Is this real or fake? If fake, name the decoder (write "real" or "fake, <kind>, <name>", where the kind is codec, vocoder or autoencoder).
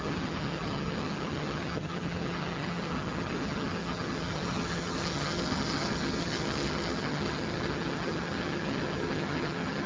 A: fake, vocoder, HiFi-GAN